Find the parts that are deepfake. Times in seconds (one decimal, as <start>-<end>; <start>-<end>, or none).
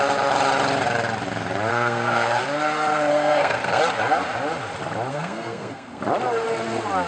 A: 1.7-2.4; 3.1-3.8; 5.1-6.0